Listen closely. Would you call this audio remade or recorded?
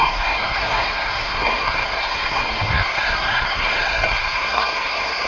remade